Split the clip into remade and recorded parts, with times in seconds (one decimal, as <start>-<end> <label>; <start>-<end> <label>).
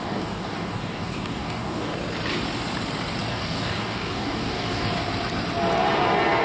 0.0-2.0 remade; 2.0-3.3 recorded; 3.3-5.0 remade; 5.0-6.4 recorded